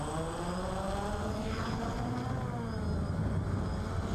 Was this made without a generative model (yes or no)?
yes